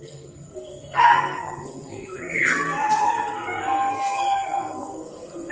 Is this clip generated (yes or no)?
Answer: yes